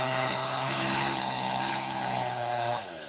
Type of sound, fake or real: fake